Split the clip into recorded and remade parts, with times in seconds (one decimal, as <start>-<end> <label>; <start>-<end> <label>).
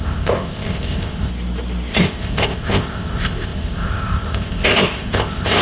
0.0-1.3 remade; 1.3-1.9 recorded; 1.9-5.6 remade